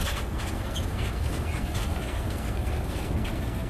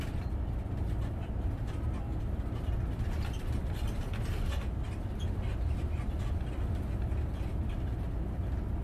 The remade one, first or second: first